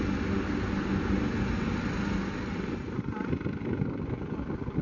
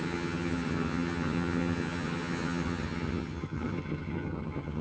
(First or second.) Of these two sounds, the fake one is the second